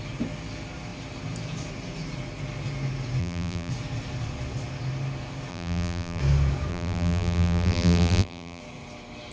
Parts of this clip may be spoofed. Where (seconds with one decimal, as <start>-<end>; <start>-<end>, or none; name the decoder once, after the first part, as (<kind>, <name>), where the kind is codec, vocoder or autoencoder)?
3.2-3.7 (vocoder, BigVGAN v2); 5.5-6.2; 6.7-8.6